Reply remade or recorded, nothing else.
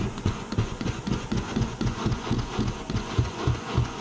remade